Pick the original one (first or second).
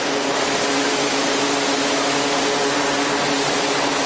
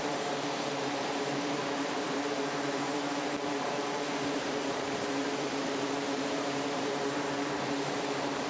first